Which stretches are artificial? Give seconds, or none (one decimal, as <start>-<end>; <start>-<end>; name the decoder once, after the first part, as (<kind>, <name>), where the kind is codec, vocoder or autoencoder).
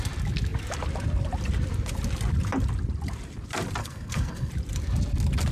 3.8-4.5 (codec, SNAC)